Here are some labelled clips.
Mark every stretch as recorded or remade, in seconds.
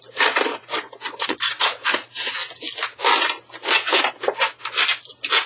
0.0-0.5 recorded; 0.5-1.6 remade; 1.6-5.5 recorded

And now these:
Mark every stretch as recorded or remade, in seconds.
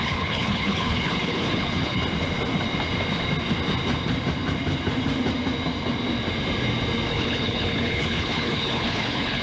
0.0-2.0 remade; 2.0-7.1 recorded; 7.1-9.4 remade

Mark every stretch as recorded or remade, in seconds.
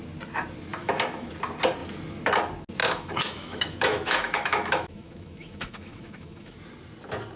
0.0-0.8 recorded; 0.8-1.3 remade; 1.3-2.8 recorded; 2.8-6.6 remade; 6.6-7.4 recorded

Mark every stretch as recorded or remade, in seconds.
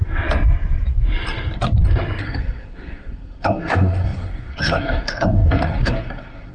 0.0-2.2 recorded; 2.2-6.5 remade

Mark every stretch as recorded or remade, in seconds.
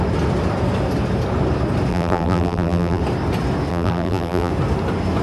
0.0-1.9 recorded; 1.9-3.0 remade; 3.0-3.7 recorded; 3.7-4.5 remade; 4.5-5.2 recorded